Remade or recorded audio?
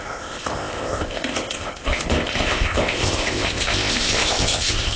remade